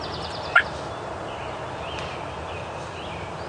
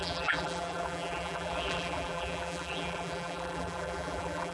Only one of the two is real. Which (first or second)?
first